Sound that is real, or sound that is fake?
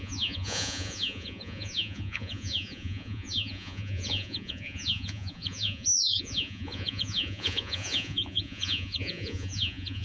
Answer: fake